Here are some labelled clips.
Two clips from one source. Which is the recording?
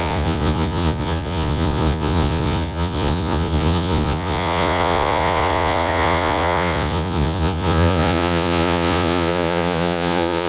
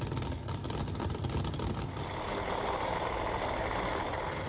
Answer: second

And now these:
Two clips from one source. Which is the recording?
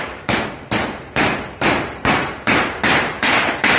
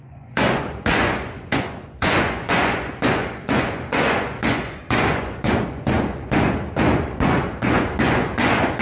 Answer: first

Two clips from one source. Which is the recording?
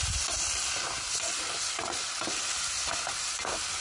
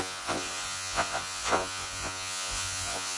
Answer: first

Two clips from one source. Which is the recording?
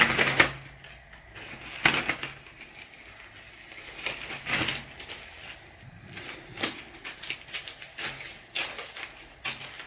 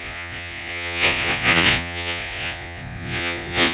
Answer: first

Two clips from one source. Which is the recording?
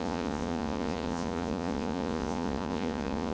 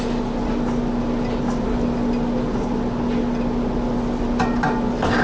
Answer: second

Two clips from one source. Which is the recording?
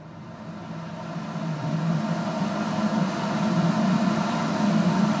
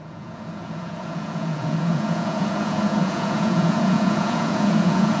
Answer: first